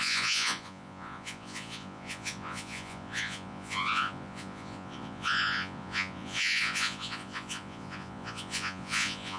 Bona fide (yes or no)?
no